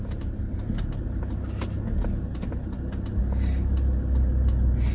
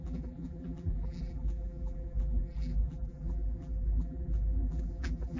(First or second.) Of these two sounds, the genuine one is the first